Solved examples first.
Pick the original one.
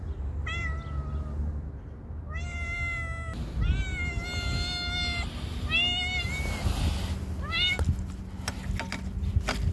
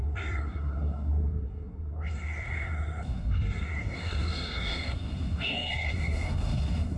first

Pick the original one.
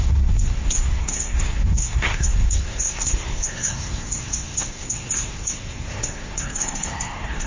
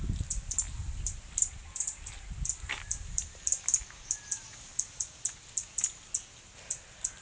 second